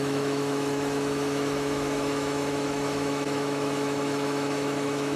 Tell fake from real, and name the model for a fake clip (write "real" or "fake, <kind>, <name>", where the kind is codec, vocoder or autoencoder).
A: fake, autoencoder, DAC-VAE